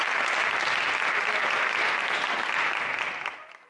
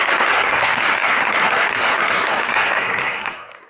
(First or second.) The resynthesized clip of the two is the second